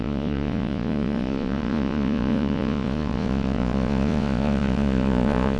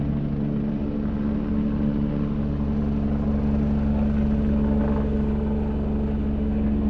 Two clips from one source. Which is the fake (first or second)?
first